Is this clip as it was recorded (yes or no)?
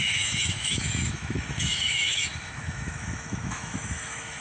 no